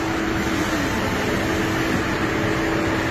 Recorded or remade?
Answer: recorded